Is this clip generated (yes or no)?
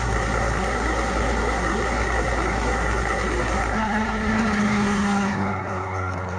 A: yes